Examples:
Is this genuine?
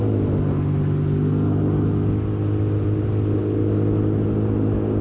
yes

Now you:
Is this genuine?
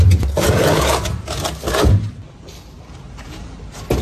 yes